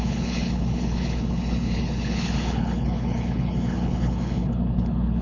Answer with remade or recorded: remade